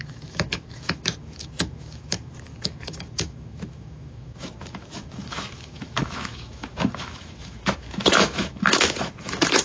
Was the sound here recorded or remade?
remade